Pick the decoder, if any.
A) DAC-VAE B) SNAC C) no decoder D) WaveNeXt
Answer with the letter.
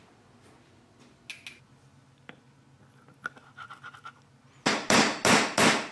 C